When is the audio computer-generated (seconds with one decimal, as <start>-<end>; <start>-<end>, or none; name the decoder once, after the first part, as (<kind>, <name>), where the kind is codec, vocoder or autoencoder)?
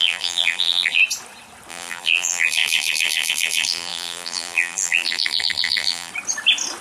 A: 0.0-1.0 (vocoder, BigVGAN v2); 1.7-6.1